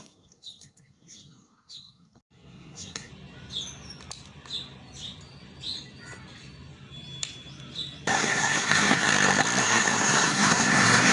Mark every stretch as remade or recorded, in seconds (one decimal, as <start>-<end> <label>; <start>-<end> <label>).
0.0-3.1 remade; 3.1-8.1 recorded; 8.1-9.1 remade; 9.1-9.6 recorded; 9.6-11.1 remade